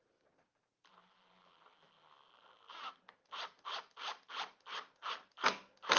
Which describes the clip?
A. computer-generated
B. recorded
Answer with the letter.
B